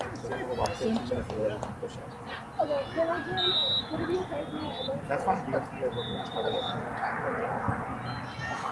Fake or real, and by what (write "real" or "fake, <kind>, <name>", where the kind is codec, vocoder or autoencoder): real